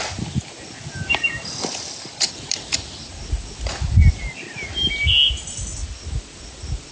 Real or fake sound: real